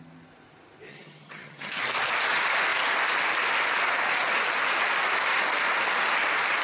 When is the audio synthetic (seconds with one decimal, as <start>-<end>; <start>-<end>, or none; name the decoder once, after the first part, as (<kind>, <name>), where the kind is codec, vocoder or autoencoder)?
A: 0.9-1.8 (vocoder, HiFi-GAN)